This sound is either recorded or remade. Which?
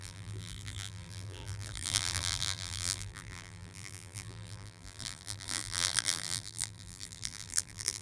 remade